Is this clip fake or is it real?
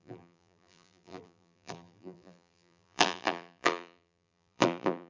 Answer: fake